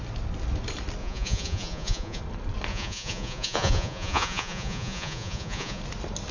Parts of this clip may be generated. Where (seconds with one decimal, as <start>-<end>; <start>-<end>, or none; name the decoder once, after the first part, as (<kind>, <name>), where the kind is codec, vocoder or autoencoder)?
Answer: 1.0-2.2 (vocoder, Vocos); 2.7-5.8